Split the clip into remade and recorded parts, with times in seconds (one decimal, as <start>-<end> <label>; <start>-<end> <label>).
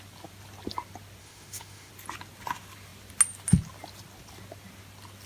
0.0-1.2 recorded; 1.2-1.9 remade; 1.9-5.3 recorded